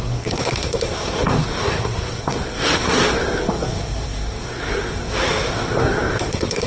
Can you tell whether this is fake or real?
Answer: fake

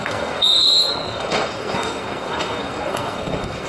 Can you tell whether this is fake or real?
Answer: fake